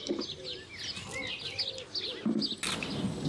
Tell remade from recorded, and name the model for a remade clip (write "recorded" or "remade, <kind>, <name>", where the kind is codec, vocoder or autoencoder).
recorded